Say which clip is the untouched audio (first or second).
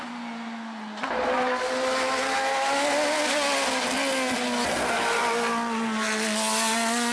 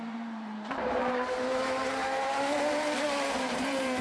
first